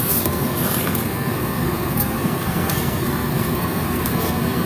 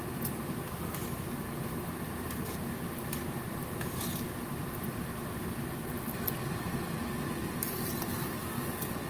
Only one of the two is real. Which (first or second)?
second